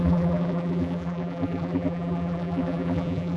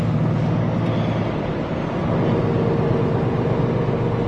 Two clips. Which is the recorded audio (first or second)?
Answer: second